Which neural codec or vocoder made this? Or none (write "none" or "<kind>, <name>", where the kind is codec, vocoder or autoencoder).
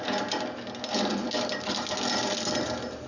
none